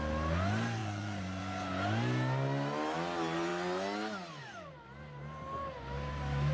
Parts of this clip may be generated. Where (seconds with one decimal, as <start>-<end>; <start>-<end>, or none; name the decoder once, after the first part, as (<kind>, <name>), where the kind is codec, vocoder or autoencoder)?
0.8-1.4 (vocoder, Vocos)